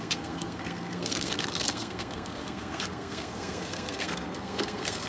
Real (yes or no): no